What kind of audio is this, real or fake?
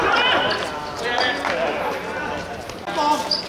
real